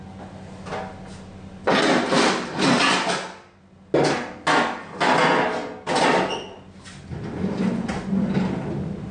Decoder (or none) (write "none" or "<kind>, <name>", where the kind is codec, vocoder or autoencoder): none